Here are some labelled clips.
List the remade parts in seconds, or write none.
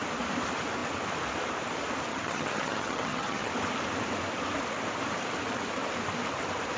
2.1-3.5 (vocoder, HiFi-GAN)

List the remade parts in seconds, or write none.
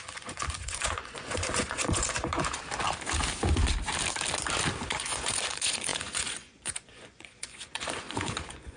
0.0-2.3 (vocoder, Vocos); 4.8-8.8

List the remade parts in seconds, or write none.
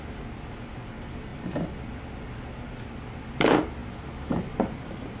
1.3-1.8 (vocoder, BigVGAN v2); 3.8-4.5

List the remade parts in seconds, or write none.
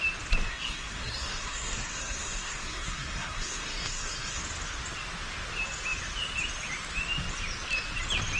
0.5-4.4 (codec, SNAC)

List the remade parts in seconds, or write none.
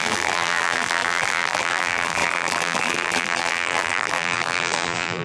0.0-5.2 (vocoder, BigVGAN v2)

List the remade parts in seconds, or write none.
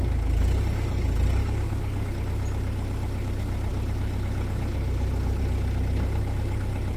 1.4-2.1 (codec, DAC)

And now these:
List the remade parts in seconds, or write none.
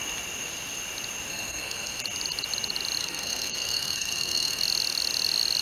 1.3-2.0 (codec, SNAC); 3.0-4.6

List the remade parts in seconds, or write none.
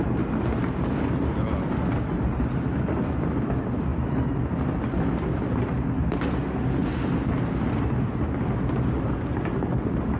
none